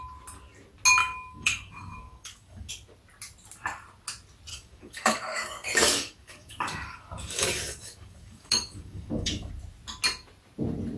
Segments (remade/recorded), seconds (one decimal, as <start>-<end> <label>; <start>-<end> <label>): 0.0-1.0 recorded; 1.0-2.7 remade; 2.7-4.5 recorded; 4.5-9.5 remade; 9.5-11.0 recorded